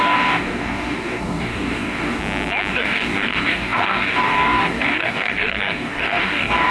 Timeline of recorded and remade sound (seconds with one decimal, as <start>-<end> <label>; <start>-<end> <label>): 0.0-2.2 remade; 2.2-2.7 recorded; 2.7-6.7 remade

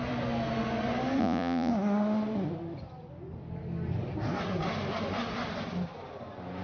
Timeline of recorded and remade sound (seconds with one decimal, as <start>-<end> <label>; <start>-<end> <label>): 0.0-1.2 recorded; 1.2-1.7 remade; 1.7-6.6 recorded

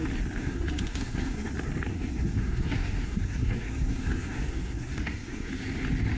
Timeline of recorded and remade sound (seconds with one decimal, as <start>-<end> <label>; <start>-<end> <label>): 0.0-0.4 recorded; 0.4-1.5 remade; 1.5-1.9 recorded; 1.9-5.5 remade; 5.5-6.2 recorded

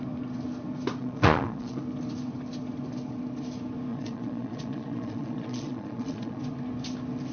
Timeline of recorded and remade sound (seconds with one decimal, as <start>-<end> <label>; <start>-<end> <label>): 0.0-1.0 recorded; 1.0-1.8 remade; 1.8-3.9 recorded; 3.9-6.4 remade; 6.4-7.3 recorded

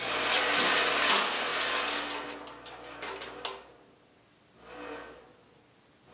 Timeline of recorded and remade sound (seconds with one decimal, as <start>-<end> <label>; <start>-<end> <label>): 0.0-6.1 recorded

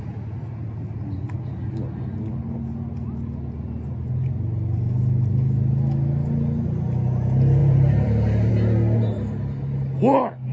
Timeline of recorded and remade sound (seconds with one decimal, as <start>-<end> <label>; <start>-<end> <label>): 0.0-7.6 recorded; 7.6-8.5 remade; 8.5-10.5 recorded